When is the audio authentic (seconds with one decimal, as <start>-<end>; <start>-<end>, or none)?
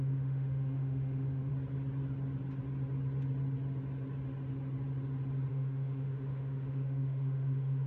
1.5-5.5